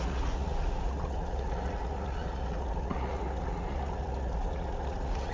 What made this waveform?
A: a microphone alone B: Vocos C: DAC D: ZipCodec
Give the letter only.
B